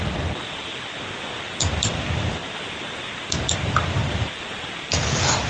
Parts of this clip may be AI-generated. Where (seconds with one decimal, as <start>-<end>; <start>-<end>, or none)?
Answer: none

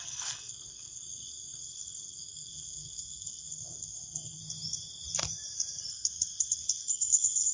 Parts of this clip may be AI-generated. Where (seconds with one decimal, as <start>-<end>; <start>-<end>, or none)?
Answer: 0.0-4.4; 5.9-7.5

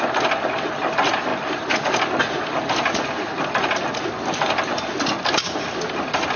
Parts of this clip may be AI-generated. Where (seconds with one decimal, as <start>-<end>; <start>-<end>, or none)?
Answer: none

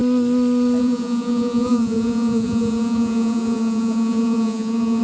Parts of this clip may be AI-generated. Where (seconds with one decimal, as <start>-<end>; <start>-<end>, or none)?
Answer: 0.8-5.0

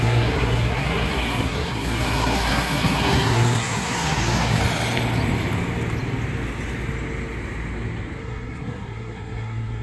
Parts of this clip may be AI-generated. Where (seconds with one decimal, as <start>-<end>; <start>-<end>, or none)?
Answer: 0.0-4.6; 8.2-9.8